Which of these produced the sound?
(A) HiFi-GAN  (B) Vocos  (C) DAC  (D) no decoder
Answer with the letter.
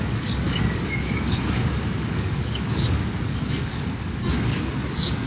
C